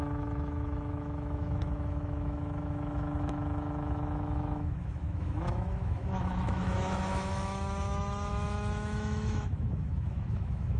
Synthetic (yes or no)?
yes